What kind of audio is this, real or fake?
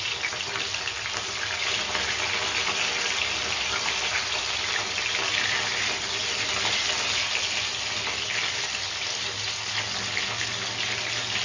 real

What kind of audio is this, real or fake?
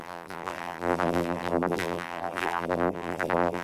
fake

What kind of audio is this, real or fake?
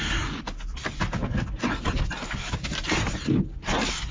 real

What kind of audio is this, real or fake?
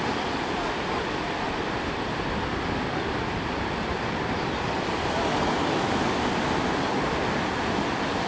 real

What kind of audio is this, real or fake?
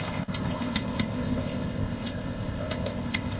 fake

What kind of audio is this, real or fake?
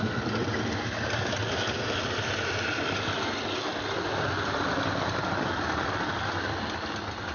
real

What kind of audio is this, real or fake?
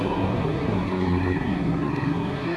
fake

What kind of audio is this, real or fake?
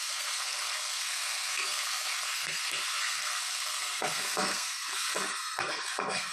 fake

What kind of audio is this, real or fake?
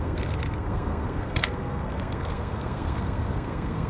fake